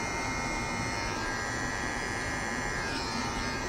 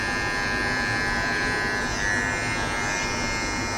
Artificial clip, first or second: first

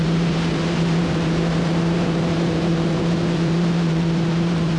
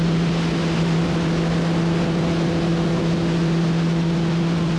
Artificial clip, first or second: first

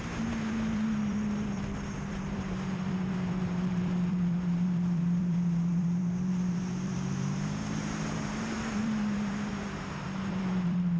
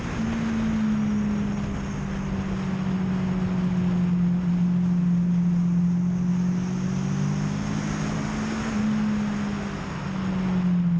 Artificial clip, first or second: first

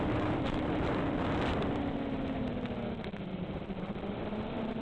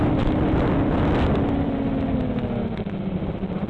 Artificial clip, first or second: first